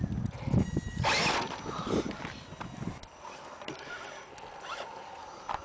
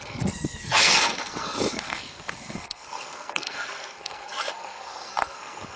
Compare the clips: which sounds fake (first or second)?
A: second